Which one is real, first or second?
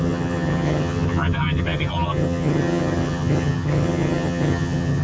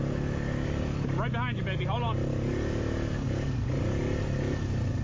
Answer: second